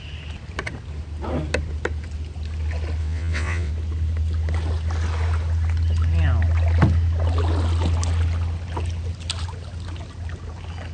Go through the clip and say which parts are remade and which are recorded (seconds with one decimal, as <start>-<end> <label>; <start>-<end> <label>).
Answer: 0.0-3.0 recorded; 3.0-3.7 remade; 3.7-10.9 recorded

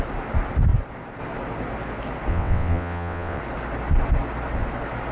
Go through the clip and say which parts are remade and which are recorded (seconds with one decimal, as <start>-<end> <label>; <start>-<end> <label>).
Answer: 0.0-2.3 recorded; 2.3-3.4 remade; 3.4-5.1 recorded

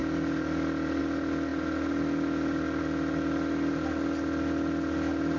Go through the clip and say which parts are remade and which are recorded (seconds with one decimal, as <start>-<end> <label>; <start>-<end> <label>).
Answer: 0.0-5.4 recorded

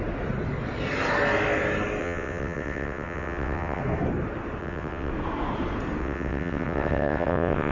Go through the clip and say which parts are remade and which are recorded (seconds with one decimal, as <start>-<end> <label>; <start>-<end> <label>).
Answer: 0.0-2.0 recorded; 2.0-3.8 remade; 3.8-4.6 recorded; 4.6-5.1 remade; 5.1-6.0 recorded; 6.0-7.7 remade

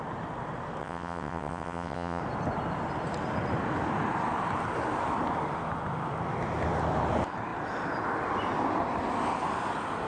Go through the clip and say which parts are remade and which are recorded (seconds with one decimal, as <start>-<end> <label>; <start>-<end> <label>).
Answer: 0.0-0.8 recorded; 0.8-2.2 remade; 2.2-10.1 recorded